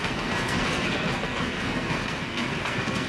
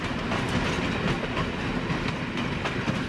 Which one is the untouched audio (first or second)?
second